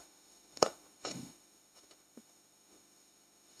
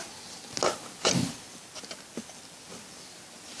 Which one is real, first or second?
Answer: second